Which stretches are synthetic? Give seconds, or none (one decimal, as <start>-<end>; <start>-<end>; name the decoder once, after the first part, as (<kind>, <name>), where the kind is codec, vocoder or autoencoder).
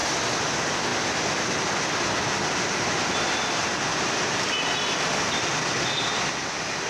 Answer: 0.9-2.4 (vocoder, BigVGAN v2); 3.9-6.2